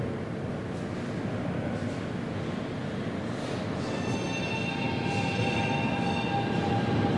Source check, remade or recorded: recorded